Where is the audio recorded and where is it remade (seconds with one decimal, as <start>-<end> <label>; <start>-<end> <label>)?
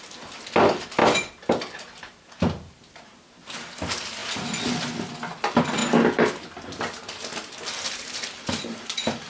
0.0-9.3 recorded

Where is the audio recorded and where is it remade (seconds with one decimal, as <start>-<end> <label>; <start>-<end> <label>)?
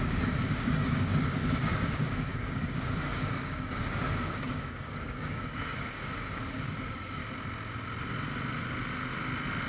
0.0-7.2 remade; 7.2-9.7 recorded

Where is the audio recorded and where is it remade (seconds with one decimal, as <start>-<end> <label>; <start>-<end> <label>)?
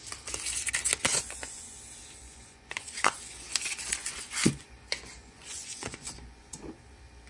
0.0-1.1 recorded; 1.1-1.8 remade; 1.8-2.2 recorded; 2.2-6.6 remade; 6.6-7.3 recorded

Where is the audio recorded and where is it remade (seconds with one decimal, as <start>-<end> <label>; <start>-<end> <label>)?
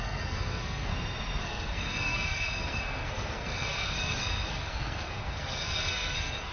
0.0-0.9 remade; 0.9-1.4 recorded; 1.4-6.5 remade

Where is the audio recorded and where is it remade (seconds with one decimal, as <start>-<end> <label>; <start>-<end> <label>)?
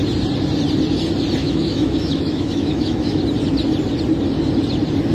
0.0-1.4 recorded; 1.4-3.2 remade; 3.2-5.1 recorded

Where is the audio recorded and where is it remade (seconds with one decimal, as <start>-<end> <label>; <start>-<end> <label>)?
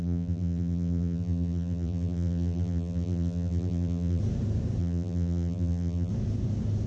0.0-4.2 remade; 4.2-4.8 recorded; 4.8-6.1 remade; 6.1-6.9 recorded